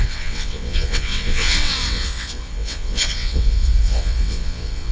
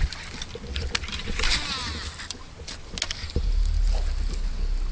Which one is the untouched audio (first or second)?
second